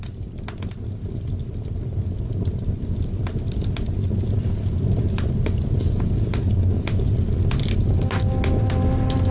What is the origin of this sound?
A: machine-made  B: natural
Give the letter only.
B